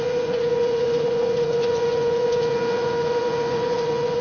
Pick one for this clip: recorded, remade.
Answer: remade